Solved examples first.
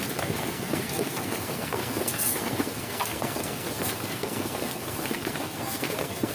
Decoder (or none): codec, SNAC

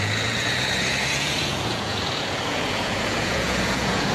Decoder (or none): vocoder, Vocos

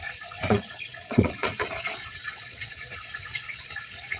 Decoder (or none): vocoder, Vocos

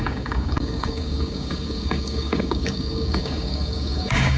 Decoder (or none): codec, DAC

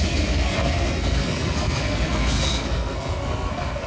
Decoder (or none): codec, SNAC